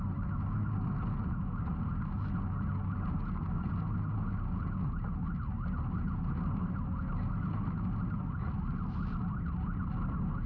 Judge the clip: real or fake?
real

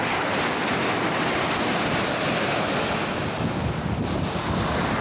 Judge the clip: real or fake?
real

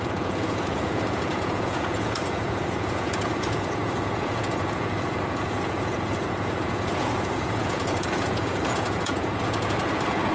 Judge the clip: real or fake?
fake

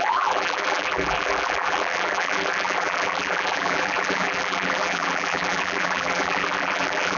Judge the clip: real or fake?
fake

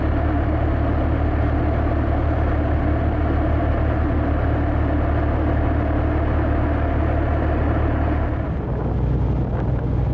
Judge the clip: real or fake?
real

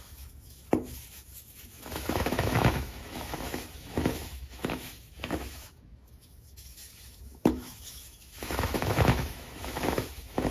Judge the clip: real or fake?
fake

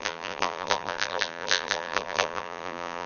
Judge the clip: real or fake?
fake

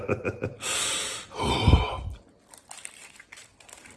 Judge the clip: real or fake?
real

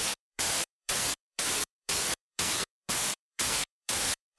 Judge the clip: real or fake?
fake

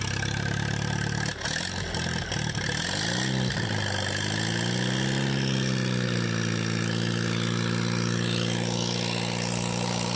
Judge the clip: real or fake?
real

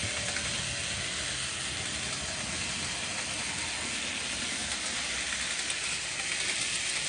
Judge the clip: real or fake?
real